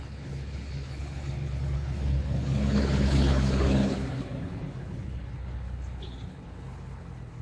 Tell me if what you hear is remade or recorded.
remade